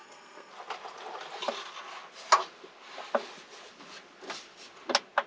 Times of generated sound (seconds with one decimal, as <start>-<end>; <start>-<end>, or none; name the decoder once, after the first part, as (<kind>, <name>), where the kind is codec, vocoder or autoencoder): 0.0-0.5 (codec, SNAC)